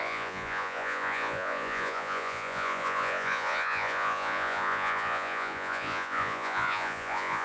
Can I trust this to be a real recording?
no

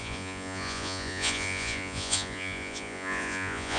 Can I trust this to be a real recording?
no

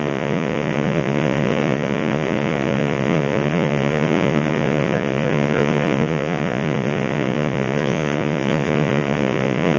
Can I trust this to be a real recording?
no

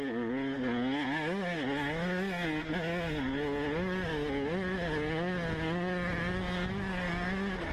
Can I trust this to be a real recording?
yes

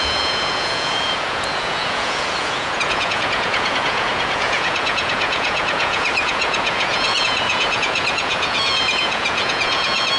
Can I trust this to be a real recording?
no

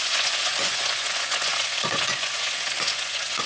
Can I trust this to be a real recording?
no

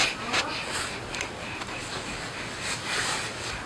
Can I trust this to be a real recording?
yes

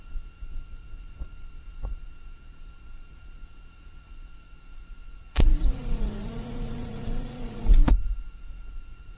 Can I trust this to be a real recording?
no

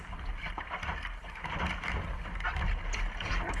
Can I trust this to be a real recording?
yes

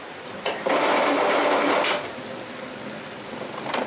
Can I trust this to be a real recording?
yes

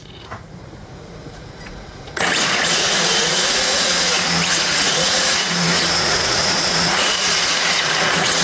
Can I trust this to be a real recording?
no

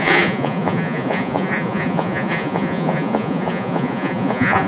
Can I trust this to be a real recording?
no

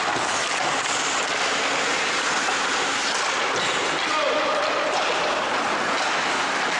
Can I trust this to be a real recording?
yes